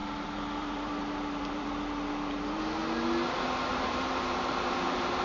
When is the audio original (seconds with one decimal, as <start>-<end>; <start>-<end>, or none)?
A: 2.8-3.7